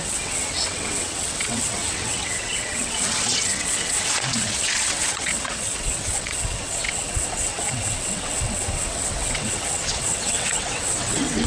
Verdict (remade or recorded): remade